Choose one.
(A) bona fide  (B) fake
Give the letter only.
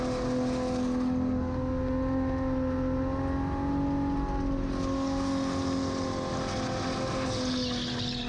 A